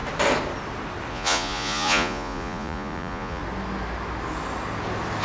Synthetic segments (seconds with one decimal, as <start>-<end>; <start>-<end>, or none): 1.1-3.4